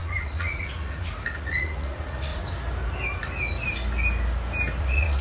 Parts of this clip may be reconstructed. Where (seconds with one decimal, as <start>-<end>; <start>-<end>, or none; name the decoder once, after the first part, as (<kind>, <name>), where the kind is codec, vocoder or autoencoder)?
0.0-2.3 (vocoder, Vocos); 4.8-5.2